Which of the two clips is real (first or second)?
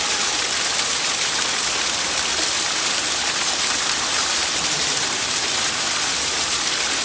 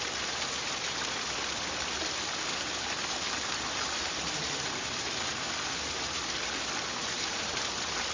second